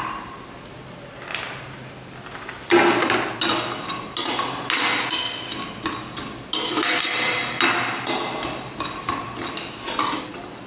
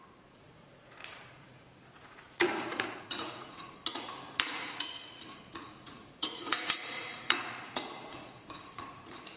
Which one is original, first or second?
first